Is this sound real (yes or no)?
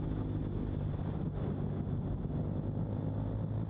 yes